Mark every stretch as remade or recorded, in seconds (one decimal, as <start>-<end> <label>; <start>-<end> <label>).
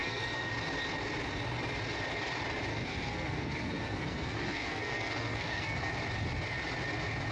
0.0-0.5 remade; 0.5-2.7 recorded; 2.7-5.9 remade; 5.9-7.3 recorded